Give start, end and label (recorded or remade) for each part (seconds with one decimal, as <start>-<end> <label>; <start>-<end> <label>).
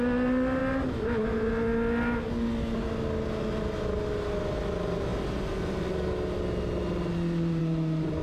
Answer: 0.0-0.6 recorded; 0.6-1.5 remade; 1.5-8.2 recorded